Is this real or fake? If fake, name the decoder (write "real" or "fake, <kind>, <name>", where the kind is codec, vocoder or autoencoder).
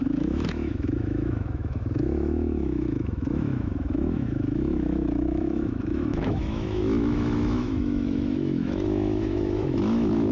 fake, autoencoder, DAC-VAE